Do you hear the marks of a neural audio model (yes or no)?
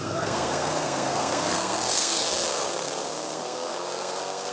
yes